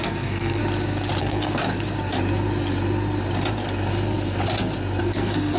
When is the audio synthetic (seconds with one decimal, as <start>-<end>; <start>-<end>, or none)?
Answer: 0.0-0.6; 1.2-1.6; 5.0-5.6